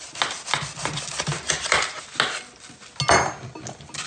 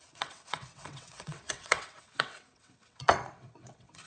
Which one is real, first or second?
first